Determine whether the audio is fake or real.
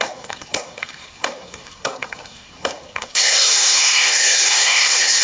fake